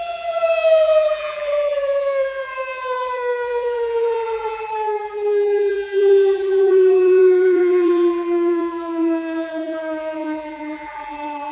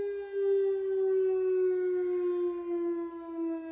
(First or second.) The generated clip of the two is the first